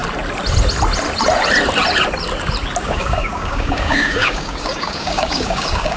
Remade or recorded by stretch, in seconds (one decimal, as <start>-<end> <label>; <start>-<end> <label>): 0.0-2.8 recorded; 2.8-6.0 remade